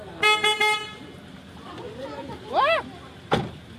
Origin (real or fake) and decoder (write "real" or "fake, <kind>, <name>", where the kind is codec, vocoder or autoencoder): real